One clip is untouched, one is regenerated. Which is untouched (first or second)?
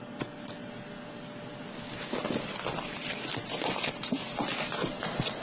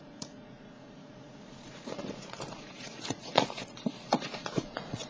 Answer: first